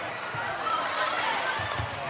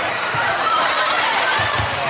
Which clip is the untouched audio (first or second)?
first